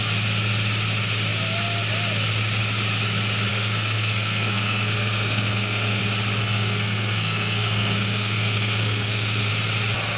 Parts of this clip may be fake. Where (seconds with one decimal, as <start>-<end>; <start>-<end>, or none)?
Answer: 3.5-6.0; 6.4-9.5